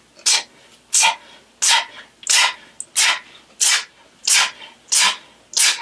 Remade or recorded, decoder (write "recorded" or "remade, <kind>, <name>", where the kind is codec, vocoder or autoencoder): recorded